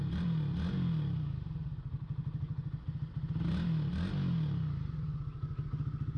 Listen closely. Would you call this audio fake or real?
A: real